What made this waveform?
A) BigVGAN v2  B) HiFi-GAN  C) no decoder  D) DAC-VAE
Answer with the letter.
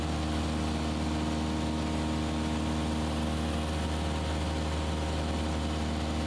C